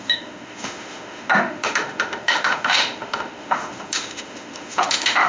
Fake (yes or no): yes